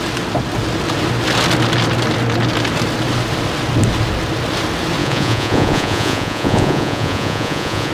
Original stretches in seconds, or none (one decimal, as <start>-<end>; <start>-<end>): 0.0-5.0